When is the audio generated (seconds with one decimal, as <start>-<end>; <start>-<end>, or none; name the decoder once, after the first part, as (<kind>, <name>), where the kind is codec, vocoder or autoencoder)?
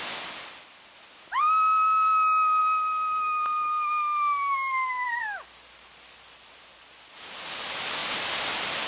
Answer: none